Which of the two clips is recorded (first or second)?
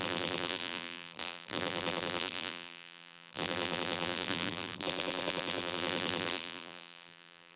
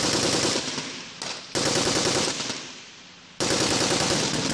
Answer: second